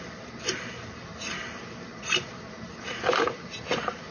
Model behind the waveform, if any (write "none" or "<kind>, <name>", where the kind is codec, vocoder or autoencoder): vocoder, BigVGAN v2